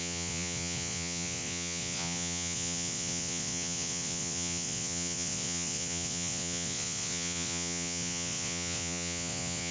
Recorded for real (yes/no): no